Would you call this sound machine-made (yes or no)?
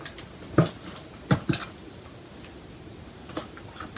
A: no